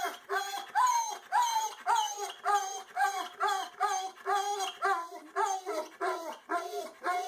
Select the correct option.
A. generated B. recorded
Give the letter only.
B